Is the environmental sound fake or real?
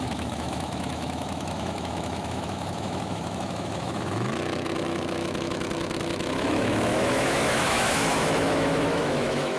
fake